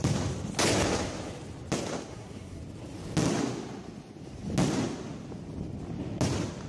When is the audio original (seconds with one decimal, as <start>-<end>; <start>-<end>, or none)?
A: 0.0-2.1; 2.6-6.7